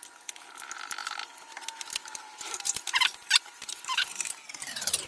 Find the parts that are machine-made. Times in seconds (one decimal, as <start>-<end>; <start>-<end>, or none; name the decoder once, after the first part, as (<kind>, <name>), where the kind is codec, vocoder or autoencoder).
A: 2.0-5.1 (vocoder, BigVGAN v2)